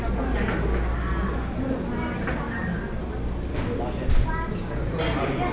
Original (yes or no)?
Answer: yes